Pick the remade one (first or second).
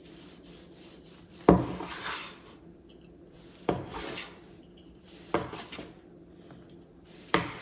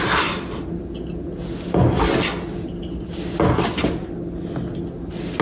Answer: first